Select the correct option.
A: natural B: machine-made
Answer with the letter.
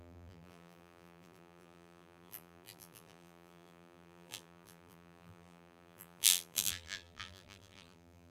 B